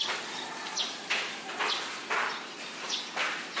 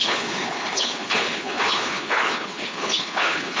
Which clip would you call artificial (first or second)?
second